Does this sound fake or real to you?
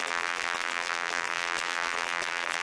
fake